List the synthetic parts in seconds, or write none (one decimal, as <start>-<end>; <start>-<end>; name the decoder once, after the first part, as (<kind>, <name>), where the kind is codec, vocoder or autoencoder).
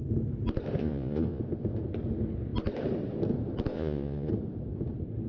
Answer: 0.8-1.4 (vocoder, Vocos); 3.7-4.3